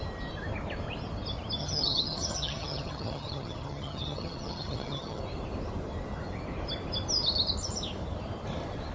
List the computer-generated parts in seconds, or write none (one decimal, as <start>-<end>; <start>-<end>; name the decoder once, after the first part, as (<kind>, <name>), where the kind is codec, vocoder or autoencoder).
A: 1.6-5.2 (vocoder, HiFi-GAN)